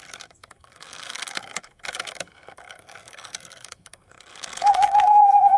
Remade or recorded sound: remade